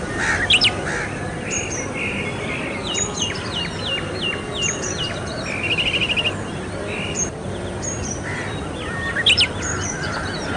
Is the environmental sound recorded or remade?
remade